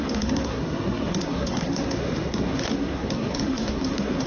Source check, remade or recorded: remade